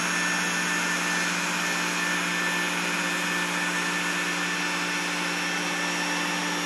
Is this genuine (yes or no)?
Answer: yes